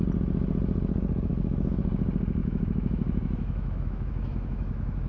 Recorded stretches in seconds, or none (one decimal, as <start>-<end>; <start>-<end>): 0.0-1.3; 1.8-2.4